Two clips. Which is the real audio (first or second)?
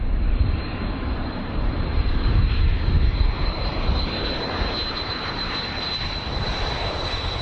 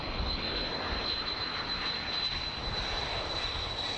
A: second